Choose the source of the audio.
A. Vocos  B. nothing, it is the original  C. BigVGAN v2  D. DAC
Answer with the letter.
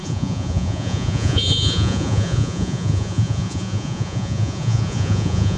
A